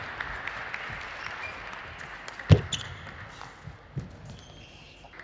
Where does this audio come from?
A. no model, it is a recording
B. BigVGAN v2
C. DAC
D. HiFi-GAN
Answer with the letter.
A